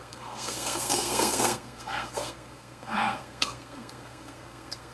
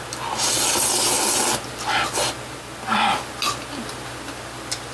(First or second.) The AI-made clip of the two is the first